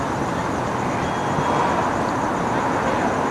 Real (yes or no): yes